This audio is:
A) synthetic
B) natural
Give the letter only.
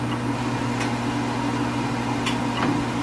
B